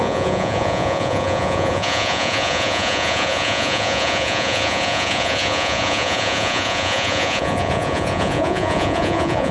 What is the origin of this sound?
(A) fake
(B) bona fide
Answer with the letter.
A